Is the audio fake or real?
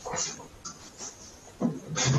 real